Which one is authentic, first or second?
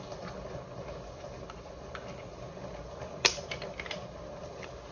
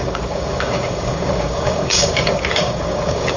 first